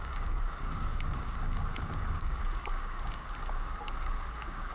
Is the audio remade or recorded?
remade